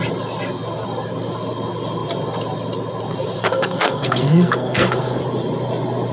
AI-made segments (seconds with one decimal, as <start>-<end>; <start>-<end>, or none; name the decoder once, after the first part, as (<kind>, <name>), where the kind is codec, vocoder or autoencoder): 3.5-5.2 (codec, SNAC)